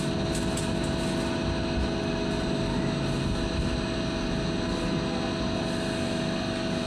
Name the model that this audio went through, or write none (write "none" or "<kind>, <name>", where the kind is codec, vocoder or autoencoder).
none